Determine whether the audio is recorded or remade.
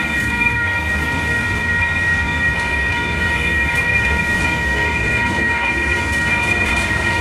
remade